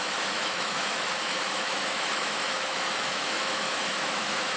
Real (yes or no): no